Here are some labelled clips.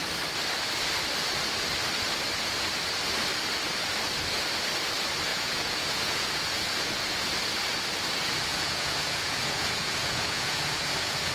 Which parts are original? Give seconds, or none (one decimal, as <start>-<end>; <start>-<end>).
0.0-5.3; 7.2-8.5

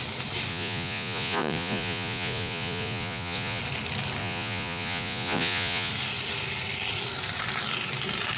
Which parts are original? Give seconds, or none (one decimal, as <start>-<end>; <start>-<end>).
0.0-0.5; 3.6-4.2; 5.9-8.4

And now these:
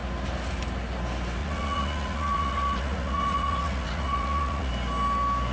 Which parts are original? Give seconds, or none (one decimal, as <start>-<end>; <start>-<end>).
0.0-1.4; 4.7-5.5

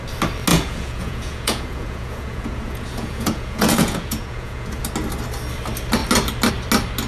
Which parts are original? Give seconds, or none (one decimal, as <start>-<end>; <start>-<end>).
0.0-0.5; 4.8-7.1

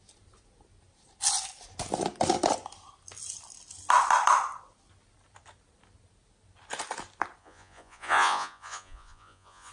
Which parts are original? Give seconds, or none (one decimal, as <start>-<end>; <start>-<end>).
0.0-7.4